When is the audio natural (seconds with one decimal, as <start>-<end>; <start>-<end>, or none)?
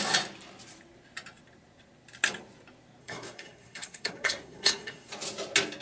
0.0-3.0; 5.1-5.8